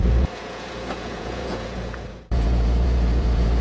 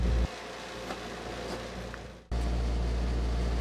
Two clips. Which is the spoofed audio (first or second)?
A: first